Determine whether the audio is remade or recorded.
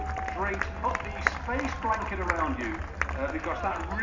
recorded